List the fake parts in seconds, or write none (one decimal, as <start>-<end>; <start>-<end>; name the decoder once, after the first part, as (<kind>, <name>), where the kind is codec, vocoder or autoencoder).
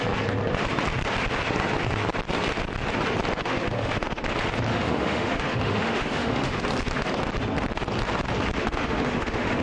3.4-4.2 (autoencoder, DAC-VAE); 4.7-6.6; 8.6-9.6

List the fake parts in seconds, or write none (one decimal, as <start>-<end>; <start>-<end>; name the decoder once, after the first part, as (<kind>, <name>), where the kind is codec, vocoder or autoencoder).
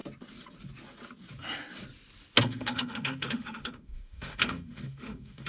2.4-5.5 (autoencoder, DAC-VAE)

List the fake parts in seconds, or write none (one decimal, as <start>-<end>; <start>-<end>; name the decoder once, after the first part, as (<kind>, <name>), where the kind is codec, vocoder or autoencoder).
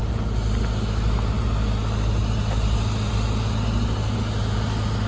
none